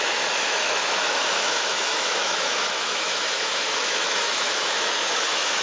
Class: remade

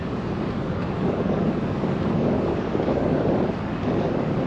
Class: remade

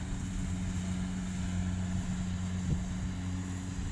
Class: recorded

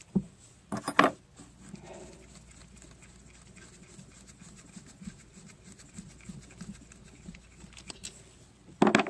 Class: recorded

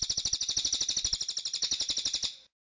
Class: recorded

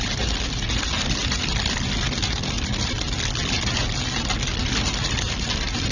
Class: recorded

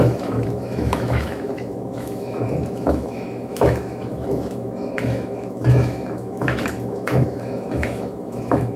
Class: remade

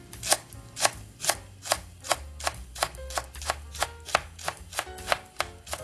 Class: recorded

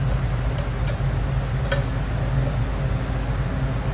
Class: recorded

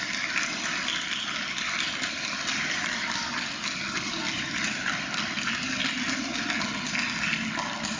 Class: recorded